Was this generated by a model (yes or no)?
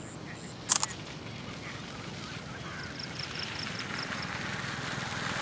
no